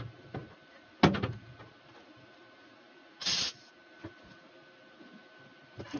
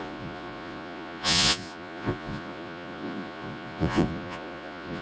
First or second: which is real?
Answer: first